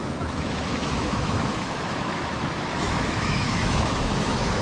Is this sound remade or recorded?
remade